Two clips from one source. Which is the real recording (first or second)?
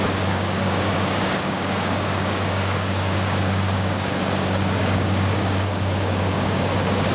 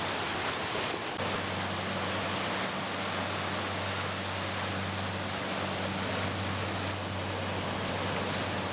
second